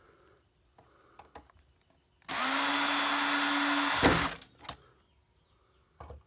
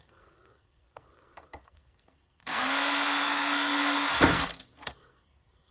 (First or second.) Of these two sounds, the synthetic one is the second